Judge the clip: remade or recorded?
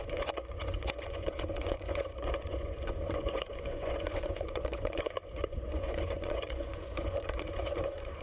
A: remade